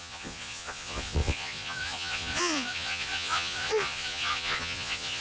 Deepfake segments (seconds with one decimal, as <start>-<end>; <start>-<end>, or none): 0.0-5.2

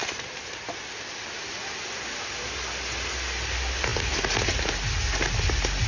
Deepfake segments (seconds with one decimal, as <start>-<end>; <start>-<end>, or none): none

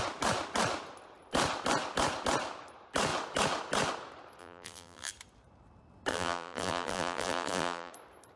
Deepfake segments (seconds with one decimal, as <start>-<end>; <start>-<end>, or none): 4.4-5.1; 6.1-7.9

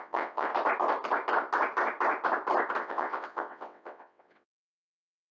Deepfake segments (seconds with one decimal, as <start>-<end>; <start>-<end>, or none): 0.0-0.5; 2.8-5.3

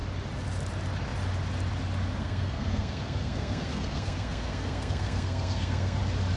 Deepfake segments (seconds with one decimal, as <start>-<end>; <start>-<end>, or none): 2.2-6.0

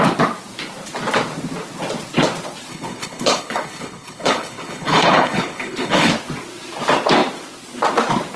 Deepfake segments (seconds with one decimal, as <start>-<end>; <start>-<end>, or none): 2.7-6.1